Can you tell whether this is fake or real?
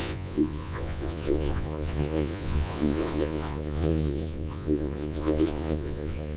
fake